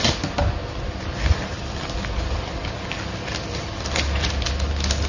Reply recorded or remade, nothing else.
recorded